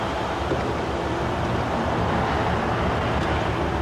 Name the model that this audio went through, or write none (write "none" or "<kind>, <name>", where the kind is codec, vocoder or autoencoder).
none